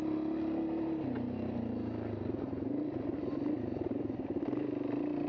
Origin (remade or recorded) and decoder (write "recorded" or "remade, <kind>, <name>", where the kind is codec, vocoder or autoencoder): recorded